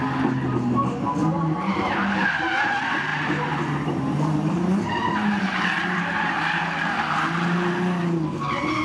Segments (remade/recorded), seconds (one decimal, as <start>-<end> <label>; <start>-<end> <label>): 0.0-1.2 recorded; 1.2-2.3 remade; 2.3-3.1 recorded; 3.1-5.6 remade; 5.6-8.8 recorded